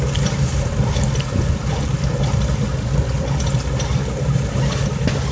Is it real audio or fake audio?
real